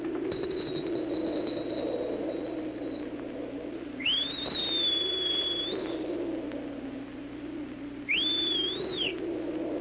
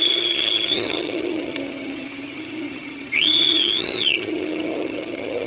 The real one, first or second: first